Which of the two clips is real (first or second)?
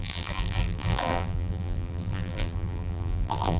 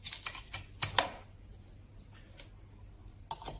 second